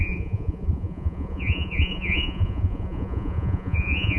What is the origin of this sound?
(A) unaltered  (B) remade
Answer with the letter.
B